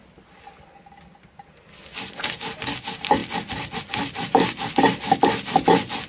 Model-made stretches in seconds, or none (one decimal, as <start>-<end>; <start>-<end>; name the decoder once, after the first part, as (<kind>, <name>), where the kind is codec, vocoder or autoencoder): none